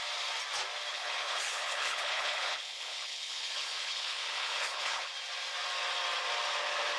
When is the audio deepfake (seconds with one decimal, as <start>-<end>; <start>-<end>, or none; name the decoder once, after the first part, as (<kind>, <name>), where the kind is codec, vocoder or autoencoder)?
0.9-5.1 (codec, HILCodec)